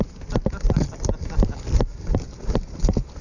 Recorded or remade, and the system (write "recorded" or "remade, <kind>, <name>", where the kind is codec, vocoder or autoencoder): recorded